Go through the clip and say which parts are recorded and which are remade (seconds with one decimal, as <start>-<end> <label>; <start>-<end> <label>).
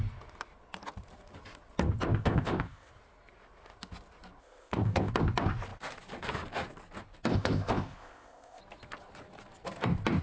0.0-2.2 recorded; 2.2-2.9 remade; 2.9-4.4 recorded; 4.4-5.1 remade; 5.1-7.3 recorded; 7.3-8.6 remade; 8.6-10.2 recorded